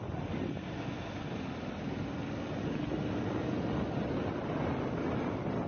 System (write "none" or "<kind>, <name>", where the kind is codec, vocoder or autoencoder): none